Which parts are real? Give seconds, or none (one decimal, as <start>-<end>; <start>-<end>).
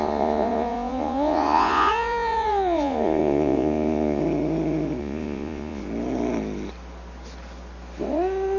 4.2-5.0; 5.8-8.6